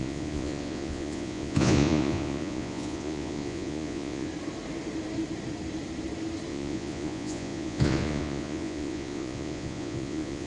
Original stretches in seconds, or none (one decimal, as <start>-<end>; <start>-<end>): 4.3-6.5